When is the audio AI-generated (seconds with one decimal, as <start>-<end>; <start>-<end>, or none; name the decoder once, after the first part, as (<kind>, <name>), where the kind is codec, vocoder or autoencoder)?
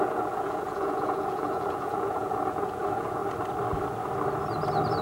0.0-3.2 (vocoder, Vocos)